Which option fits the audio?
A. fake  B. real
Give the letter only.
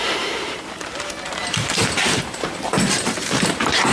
A